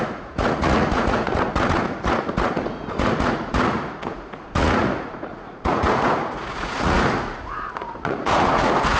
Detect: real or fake fake